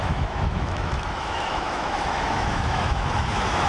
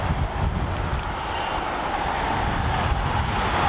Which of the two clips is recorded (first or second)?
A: second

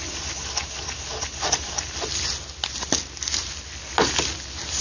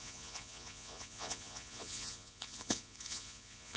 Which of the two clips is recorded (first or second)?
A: first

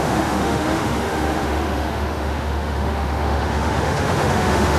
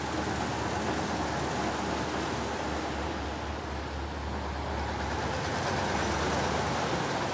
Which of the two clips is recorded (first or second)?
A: second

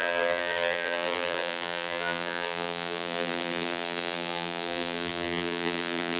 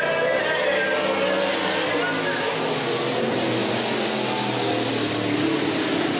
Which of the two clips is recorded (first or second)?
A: second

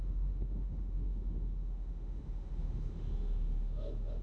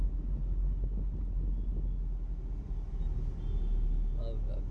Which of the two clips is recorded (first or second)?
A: second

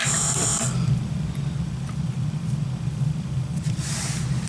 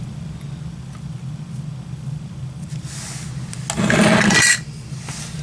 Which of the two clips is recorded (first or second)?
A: second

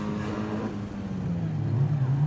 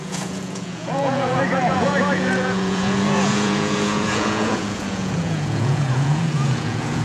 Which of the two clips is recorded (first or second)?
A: first